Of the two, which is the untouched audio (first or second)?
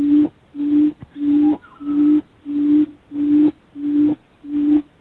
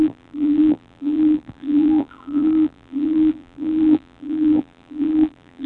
first